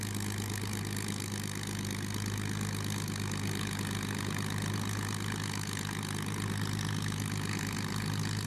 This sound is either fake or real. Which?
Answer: real